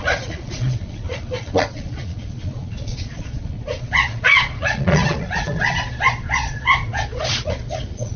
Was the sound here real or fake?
fake